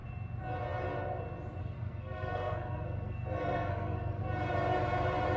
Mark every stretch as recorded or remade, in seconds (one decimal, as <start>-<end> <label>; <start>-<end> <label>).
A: 0.0-1.6 recorded; 1.6-4.2 remade; 4.2-5.4 recorded